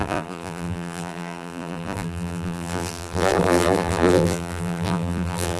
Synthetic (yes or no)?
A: yes